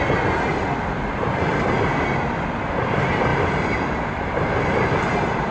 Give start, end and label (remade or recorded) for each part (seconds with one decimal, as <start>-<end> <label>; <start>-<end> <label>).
0.0-0.5 recorded; 0.5-1.5 remade; 1.5-3.3 recorded; 3.3-4.6 remade; 4.6-5.5 recorded